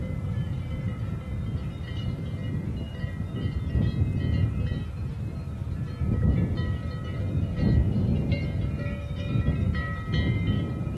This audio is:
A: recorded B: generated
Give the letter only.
A